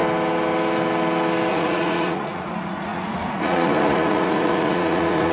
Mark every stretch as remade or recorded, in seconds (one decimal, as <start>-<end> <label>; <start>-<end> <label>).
0.0-1.5 recorded; 1.5-5.3 remade